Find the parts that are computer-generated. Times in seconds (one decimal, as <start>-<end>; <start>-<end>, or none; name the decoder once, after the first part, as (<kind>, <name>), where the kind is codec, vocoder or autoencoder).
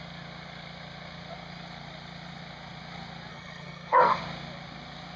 3.3-4.2 (codec, SNAC)